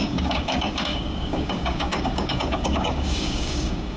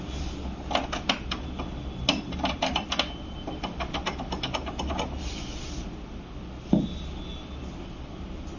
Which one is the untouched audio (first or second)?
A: second